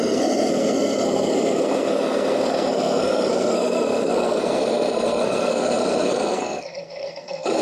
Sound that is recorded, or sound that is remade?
remade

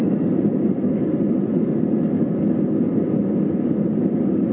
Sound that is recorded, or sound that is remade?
recorded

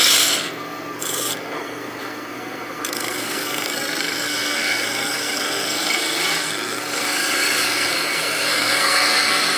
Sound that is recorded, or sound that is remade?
remade